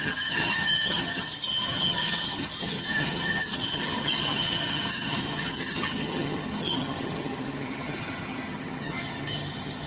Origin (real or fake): fake